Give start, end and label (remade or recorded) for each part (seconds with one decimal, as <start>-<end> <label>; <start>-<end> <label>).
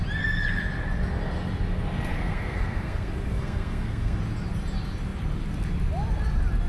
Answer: 0.0-2.1 recorded; 2.1-4.2 remade; 4.2-6.7 recorded